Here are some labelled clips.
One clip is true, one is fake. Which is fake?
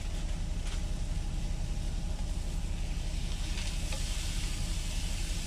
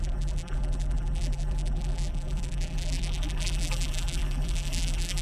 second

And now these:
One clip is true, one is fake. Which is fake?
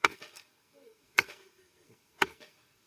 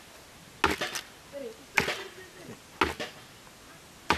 first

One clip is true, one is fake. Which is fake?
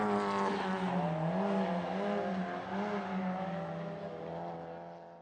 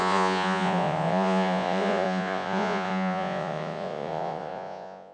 second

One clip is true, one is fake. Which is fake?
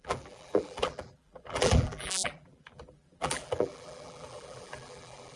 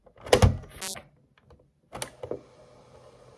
first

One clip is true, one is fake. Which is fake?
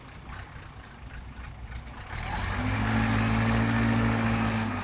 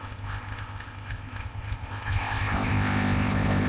second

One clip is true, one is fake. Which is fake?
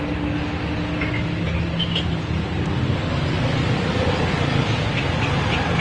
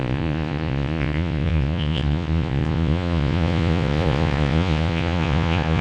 second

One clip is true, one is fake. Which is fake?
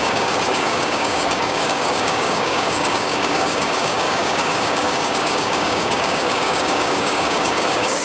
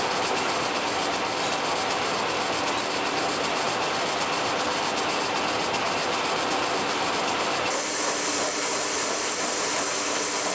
first